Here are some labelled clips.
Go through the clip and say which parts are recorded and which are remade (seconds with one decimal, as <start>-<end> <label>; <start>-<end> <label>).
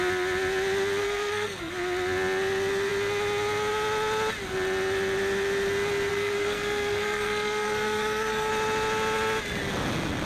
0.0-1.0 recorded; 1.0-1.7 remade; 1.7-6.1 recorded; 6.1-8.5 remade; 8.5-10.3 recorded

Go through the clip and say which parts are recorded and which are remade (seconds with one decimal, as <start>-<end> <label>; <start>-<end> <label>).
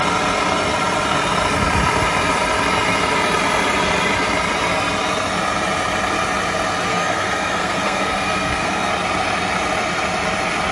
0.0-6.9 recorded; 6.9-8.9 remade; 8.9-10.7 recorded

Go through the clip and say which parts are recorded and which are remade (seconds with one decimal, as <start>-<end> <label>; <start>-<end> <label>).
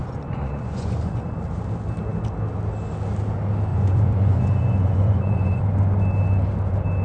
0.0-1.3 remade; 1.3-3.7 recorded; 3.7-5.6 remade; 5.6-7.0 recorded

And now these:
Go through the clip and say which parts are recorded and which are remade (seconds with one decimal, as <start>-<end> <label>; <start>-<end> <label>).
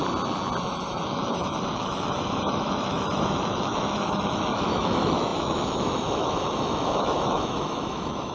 0.0-0.6 recorded; 0.6-8.3 remade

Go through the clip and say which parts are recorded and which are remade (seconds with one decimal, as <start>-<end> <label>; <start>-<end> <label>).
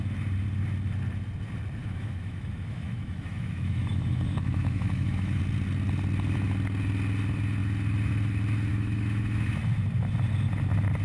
0.0-1.8 recorded; 1.8-5.4 remade; 5.4-8.7 recorded; 8.7-9.6 remade; 9.6-11.0 recorded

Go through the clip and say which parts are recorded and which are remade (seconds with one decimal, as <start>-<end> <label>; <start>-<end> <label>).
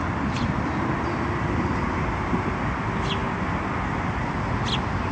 0.0-5.1 recorded